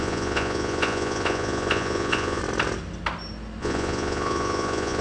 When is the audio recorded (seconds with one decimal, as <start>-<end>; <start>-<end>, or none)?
2.4-3.6